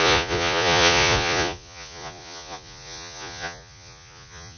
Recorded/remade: remade